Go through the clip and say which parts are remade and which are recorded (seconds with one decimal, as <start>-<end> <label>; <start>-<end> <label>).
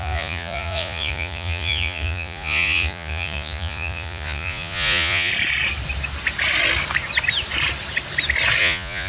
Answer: 0.0-5.3 remade; 5.3-8.6 recorded; 8.6-9.1 remade